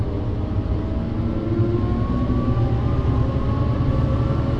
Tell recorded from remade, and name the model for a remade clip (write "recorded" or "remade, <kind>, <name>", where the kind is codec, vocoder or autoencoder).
recorded